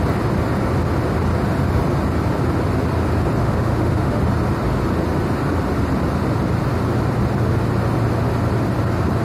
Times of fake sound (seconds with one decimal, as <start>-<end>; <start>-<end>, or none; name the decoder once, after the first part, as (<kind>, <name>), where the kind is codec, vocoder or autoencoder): 3.4-4.2 (autoencoder, DAC-VAE)